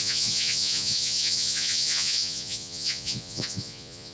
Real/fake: fake